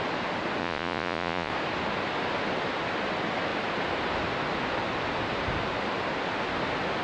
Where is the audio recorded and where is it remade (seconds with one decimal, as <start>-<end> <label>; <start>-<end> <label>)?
0.0-0.6 recorded; 0.6-1.5 remade; 1.5-7.0 recorded